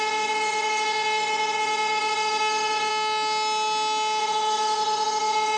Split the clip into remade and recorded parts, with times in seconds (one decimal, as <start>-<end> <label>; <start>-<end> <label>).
0.0-2.9 remade; 2.9-4.2 recorded; 4.2-5.6 remade